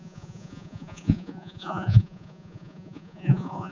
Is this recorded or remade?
remade